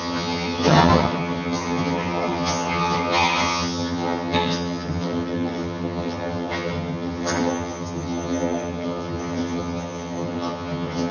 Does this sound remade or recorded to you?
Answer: remade